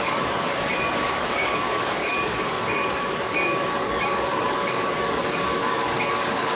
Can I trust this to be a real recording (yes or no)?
no